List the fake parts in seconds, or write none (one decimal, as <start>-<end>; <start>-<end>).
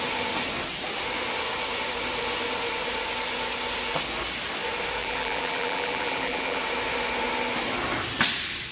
5.0-6.6